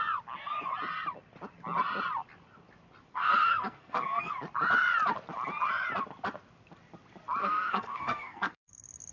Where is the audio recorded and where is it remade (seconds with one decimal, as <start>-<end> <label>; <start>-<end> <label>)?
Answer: 0.0-3.1 recorded; 3.1-4.3 remade; 4.3-7.4 recorded; 7.4-8.7 remade; 8.7-9.1 recorded